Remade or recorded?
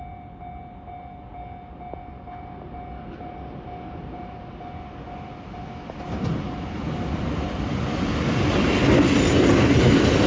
recorded